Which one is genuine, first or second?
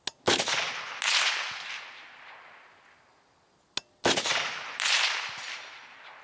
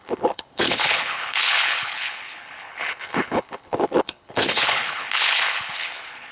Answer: first